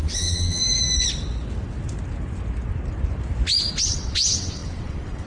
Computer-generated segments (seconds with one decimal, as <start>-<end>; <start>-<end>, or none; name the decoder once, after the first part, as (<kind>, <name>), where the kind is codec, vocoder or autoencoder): 0.0-0.6 (vocoder, WaveNeXt); 3.8-5.3